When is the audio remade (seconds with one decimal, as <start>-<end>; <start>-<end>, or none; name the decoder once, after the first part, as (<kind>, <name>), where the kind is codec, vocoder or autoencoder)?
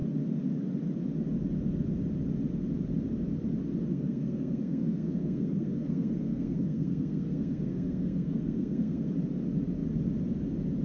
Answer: 3.9-9.1 (codec, SNAC)